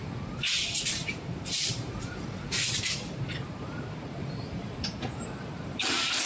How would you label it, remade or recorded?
remade